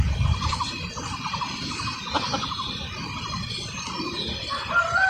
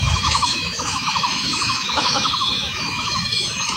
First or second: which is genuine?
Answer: first